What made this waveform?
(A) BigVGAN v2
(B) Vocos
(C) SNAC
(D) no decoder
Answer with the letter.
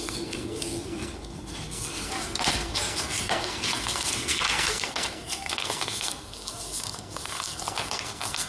C